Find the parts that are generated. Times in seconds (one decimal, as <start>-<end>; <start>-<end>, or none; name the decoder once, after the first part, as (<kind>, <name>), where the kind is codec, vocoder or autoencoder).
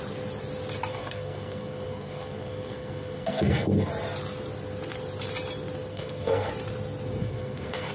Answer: 0.9-3.9 (codec, SNAC); 5.9-6.5; 7.2-7.9